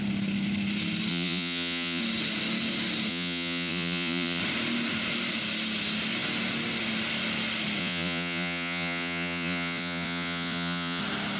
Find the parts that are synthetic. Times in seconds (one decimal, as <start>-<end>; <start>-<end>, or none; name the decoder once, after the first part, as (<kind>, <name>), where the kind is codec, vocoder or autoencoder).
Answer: 1.1-2.0 (vocoder, Vocos); 3.1-4.4; 7.8-11.0